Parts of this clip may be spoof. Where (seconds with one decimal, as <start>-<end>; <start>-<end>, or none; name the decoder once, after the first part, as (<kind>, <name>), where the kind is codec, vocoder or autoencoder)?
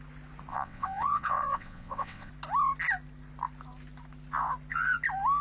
0.5-2.3 (vocoder, WaveNeXt)